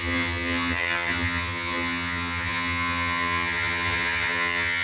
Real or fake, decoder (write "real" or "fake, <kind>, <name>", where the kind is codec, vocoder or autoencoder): fake, vocoder, HiFi-GAN